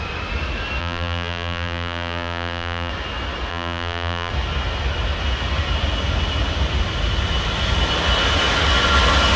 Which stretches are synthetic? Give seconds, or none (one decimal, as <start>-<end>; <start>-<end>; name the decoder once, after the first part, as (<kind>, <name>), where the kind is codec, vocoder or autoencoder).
0.8-2.9 (vocoder, BigVGAN v2); 3.5-4.3